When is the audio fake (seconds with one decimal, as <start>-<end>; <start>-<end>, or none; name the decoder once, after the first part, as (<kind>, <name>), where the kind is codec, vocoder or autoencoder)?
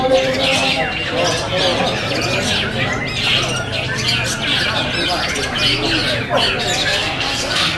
6.8-7.8 (codec, SNAC)